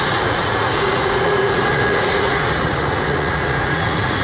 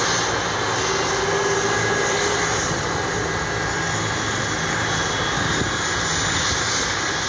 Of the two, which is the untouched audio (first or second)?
second